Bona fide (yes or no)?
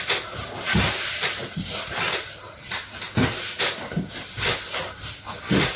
yes